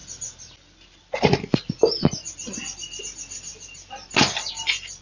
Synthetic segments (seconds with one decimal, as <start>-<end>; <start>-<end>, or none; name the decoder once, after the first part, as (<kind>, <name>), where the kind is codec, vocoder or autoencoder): none